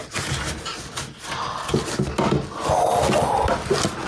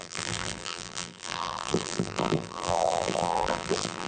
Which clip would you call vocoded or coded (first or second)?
second